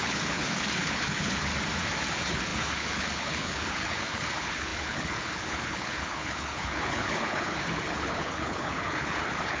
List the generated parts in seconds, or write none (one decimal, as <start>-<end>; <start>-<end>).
0.0-1.5; 2.1-9.6